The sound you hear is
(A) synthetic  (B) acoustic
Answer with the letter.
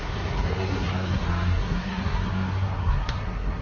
A